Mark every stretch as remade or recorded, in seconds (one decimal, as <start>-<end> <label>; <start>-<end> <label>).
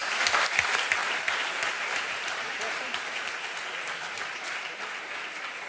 0.0-1.0 recorded; 1.0-3.3 remade; 3.3-5.7 recorded